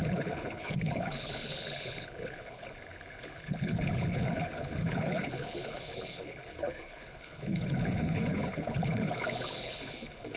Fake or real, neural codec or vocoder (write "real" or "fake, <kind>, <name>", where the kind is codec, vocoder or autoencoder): fake, codec, HILCodec